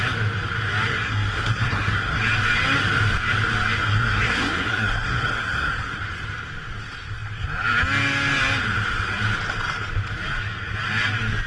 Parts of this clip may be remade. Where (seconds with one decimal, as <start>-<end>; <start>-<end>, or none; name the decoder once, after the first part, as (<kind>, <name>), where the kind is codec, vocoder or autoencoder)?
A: 0.9-2.2 (codec, SNAC); 3.8-6.0